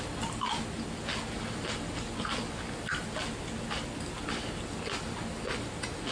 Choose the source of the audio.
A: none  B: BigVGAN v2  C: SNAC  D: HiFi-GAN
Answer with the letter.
A